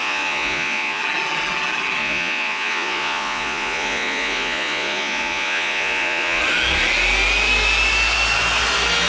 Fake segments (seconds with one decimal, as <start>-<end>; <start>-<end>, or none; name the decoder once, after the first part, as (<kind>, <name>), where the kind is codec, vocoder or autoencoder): 0.0-1.0 (vocoder, Vocos); 2.0-6.4